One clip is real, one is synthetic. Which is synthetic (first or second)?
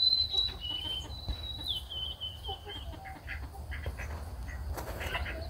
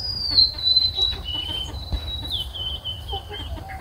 second